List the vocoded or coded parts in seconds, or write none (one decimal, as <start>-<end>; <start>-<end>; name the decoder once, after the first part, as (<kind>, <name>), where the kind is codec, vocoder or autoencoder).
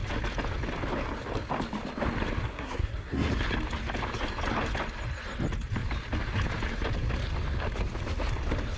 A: 2.5-3.3 (codec, SNAC)